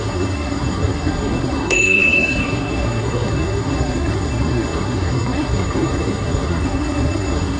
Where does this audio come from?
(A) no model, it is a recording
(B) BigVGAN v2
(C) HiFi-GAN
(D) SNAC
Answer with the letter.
D